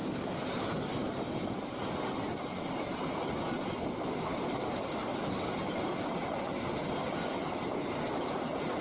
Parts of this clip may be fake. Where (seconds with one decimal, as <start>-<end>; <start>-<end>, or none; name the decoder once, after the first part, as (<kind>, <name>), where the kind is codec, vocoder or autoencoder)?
none